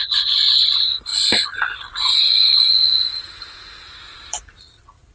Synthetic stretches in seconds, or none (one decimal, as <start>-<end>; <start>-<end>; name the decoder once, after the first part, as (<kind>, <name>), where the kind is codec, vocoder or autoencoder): 0.0-1.1 (vocoder, BigVGAN v2); 4.2-5.1